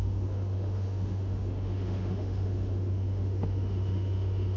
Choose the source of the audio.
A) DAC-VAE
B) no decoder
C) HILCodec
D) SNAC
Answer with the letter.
A